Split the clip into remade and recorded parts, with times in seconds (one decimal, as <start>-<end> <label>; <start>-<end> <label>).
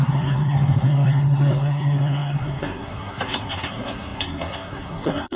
0.0-5.4 remade